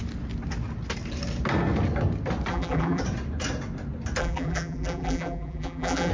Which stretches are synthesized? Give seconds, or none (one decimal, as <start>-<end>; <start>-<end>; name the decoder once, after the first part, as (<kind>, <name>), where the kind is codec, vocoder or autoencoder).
2.5-3.0 (vocoder, BigVGAN v2); 4.2-6.1